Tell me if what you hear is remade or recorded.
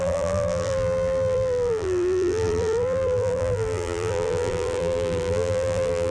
remade